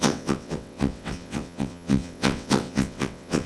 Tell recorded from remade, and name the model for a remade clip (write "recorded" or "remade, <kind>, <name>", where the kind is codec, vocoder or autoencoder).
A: remade, vocoder, WaveNeXt